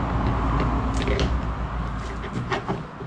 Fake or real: real